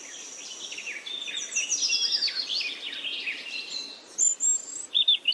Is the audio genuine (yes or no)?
yes